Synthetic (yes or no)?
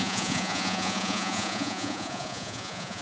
yes